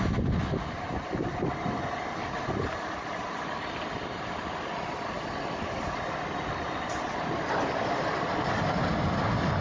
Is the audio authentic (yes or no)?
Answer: yes